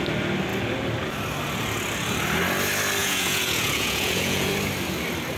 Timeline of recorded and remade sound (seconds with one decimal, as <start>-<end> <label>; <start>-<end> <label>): 0.0-3.0 recorded; 3.0-4.5 remade; 4.5-5.4 recorded